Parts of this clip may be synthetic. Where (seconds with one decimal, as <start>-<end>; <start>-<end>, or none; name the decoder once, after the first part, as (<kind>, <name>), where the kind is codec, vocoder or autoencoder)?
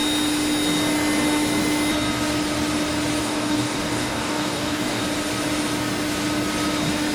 3.2-5.0 (codec, DAC)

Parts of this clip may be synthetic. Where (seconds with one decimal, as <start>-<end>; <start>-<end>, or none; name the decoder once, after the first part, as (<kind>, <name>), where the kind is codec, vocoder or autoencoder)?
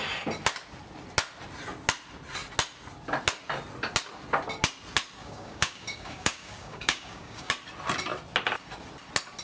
5.2-7.5 (codec, DAC)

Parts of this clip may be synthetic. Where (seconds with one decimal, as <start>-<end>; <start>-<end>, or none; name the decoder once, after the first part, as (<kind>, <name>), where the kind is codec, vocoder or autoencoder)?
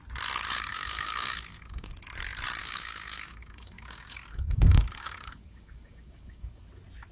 0.7-1.9 (codec, DAC); 2.6-6.6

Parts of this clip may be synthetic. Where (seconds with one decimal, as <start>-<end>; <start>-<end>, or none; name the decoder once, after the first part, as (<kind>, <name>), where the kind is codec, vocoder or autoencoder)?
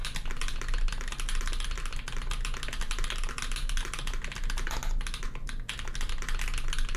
none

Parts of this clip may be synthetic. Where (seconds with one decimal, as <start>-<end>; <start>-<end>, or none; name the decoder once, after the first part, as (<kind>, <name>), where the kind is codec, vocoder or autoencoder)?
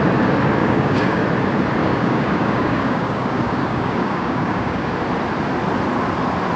0.6-1.2 (codec, DAC); 1.8-4.9